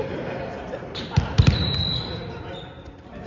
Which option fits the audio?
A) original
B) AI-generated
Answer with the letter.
A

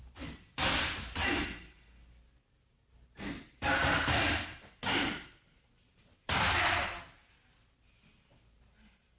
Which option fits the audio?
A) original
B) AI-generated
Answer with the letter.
A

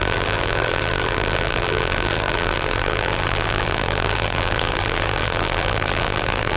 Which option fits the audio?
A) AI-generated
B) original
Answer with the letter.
A